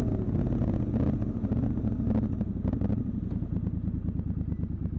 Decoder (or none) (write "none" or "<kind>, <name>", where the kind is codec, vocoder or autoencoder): none